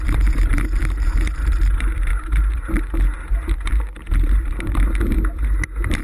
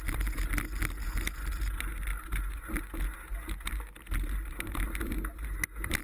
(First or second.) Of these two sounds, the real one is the second